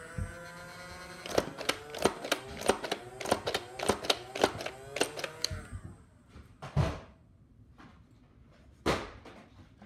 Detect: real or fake real